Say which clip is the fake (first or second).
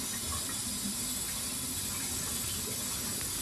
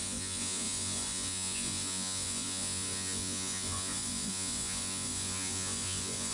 second